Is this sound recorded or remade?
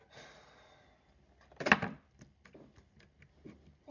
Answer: recorded